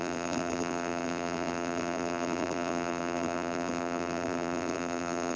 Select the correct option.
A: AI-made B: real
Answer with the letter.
A